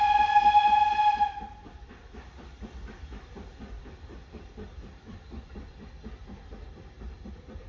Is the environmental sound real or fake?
real